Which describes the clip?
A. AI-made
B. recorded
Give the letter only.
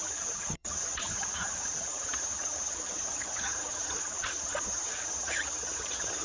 A